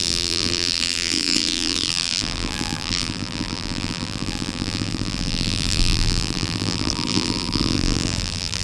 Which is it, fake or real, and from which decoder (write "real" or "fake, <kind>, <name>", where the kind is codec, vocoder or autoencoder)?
fake, vocoder, BigVGAN v2